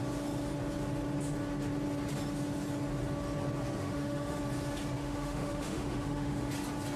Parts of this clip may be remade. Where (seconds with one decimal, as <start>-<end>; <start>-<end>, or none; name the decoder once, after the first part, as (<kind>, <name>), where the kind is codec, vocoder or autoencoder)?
3.8-4.4 (autoencoder, DAC-VAE); 5.0-6.5